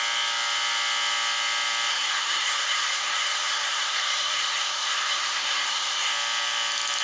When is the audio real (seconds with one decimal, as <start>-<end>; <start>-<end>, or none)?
0.0-1.9; 6.1-7.0